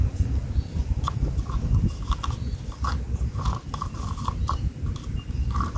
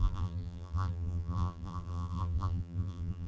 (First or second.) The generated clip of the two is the second